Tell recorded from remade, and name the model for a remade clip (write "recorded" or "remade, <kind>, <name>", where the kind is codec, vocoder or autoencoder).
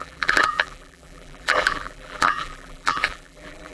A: remade, vocoder, BigVGAN v2